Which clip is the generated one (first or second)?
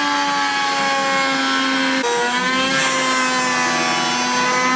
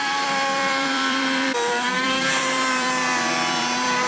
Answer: second